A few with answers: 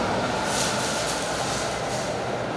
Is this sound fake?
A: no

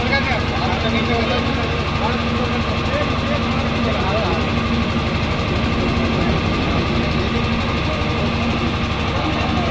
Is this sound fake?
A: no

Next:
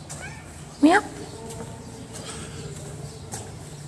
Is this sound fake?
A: no